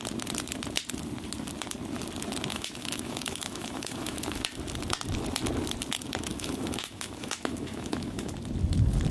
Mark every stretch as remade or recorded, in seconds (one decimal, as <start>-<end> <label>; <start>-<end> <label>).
0.0-2.5 recorded; 2.5-4.4 remade; 4.4-6.3 recorded; 6.3-8.3 remade; 8.3-9.1 recorded